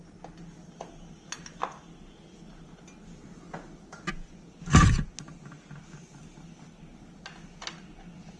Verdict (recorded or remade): recorded